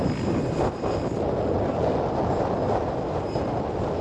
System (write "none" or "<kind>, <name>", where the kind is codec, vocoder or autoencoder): none